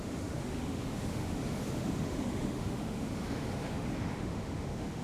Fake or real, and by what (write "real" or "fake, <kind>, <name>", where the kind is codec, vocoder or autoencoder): fake, autoencoder, DAC-VAE